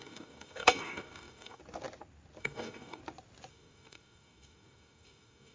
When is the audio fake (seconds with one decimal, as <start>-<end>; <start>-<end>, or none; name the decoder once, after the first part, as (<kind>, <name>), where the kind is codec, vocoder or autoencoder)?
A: 0.0-1.6 (codec, DAC); 2.4-3.0; 3.5-5.5